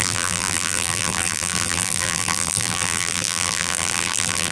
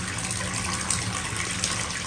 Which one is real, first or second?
second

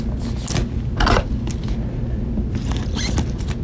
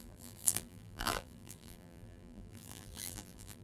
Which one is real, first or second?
first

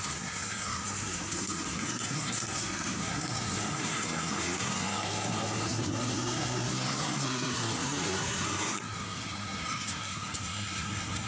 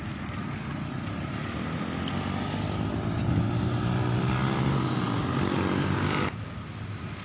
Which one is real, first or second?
second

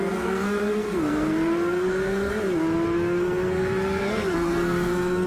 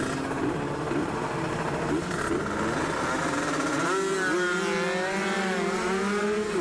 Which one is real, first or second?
second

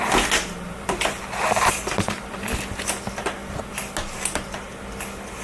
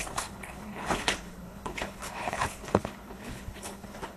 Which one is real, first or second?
first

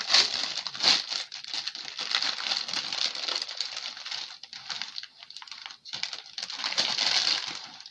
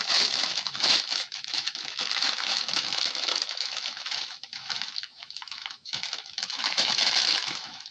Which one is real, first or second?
first